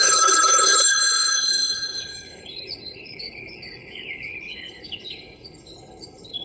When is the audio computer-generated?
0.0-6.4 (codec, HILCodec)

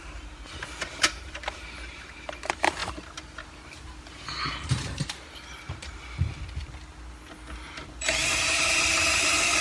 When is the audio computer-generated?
0.0-6.6 (vocoder, BigVGAN v2); 8.1-9.6

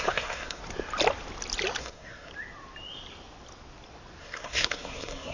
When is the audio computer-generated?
0.0-0.6 (codec, SNAC); 1.8-2.3; 4.2-5.3

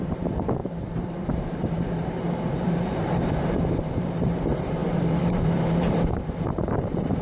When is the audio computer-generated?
0.0-7.2 (vocoder, BigVGAN v2)

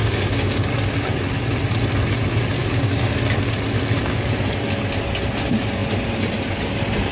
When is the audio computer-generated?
0.0-0.7 (codec, DAC); 2.6-3.2

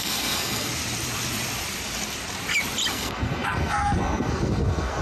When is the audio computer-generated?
0.0-0.7 (codec, SNAC); 2.9-5.0

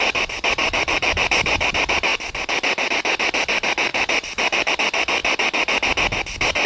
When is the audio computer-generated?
0.6-1.7 (vocoder, BigVGAN v2); 3.9-4.7

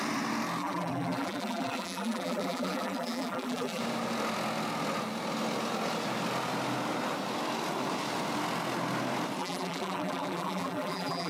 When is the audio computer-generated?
0.6-3.8 (vocoder, BigVGAN v2); 9.4-11.3